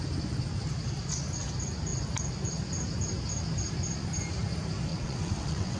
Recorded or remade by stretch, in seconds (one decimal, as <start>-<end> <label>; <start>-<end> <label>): 0.0-4.9 recorded; 4.9-5.8 remade